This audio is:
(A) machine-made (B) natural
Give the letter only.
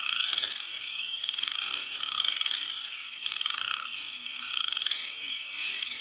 A